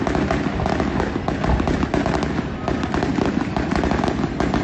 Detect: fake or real real